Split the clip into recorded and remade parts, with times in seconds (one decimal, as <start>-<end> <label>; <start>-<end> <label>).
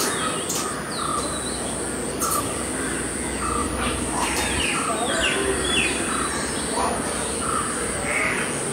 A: 0.0-3.6 recorded; 3.6-7.2 remade; 7.2-8.7 recorded